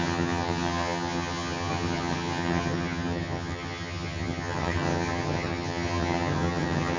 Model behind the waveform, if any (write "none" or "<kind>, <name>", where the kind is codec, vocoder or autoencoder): vocoder, HiFi-GAN